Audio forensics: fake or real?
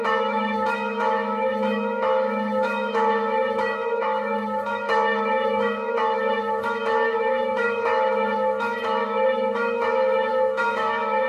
fake